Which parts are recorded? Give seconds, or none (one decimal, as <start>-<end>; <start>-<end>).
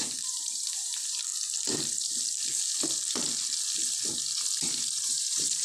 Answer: 1.3-4.6